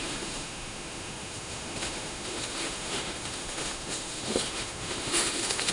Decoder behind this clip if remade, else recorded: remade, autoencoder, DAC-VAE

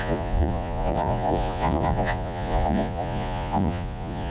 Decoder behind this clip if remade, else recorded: remade, vocoder, Vocos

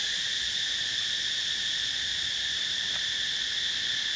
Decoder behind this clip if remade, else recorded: remade, vocoder, BigVGAN v2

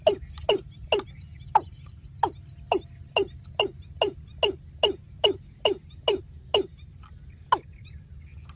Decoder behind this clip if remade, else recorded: recorded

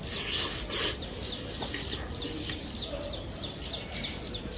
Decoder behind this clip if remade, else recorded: recorded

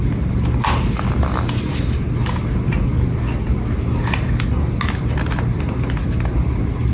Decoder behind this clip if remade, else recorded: recorded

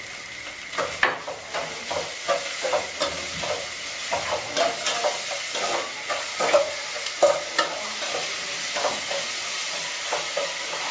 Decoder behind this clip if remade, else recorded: recorded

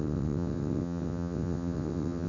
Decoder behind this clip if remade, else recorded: remade, vocoder, WaveNeXt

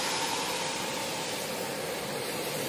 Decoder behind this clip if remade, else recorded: recorded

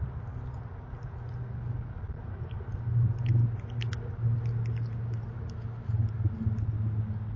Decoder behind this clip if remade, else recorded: recorded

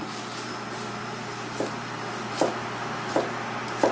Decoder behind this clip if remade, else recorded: recorded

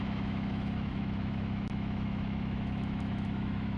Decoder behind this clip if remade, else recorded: remade, autoencoder, DAC-VAE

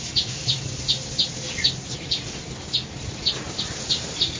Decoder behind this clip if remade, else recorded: recorded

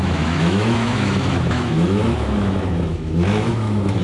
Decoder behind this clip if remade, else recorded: remade, autoencoder, DAC-VAE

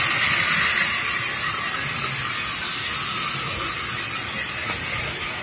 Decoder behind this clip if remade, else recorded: recorded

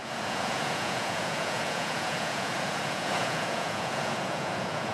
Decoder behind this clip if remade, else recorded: remade, vocoder, Vocos